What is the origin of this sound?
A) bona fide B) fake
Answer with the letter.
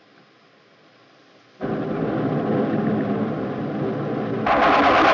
A